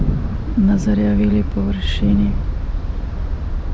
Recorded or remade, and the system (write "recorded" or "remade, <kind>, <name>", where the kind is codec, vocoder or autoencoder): recorded